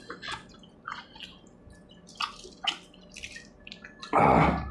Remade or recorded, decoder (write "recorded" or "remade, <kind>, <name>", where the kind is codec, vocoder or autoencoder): recorded